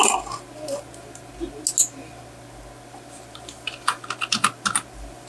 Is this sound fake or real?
real